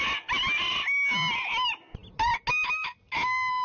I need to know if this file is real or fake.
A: real